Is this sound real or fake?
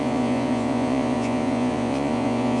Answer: fake